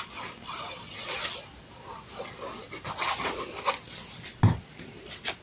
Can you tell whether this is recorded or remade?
recorded